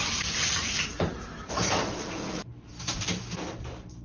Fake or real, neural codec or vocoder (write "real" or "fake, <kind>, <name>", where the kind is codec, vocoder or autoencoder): fake, vocoder, BigVGAN v2